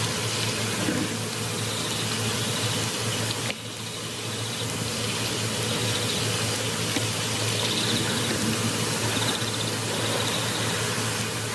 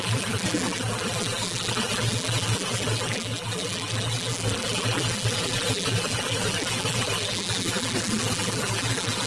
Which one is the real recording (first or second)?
first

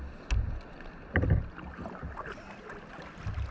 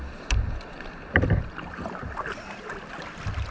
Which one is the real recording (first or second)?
first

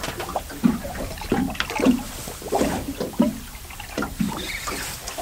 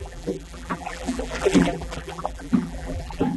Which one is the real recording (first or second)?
first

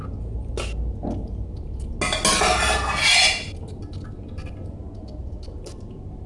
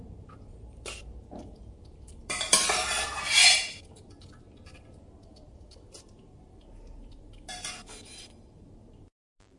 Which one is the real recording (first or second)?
first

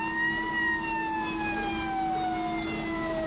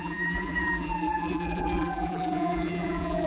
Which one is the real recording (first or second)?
first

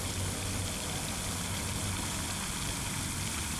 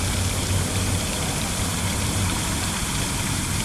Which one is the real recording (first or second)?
first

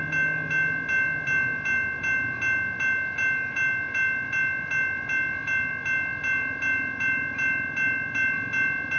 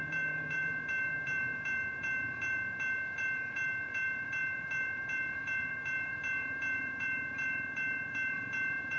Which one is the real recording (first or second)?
first